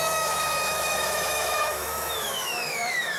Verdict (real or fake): fake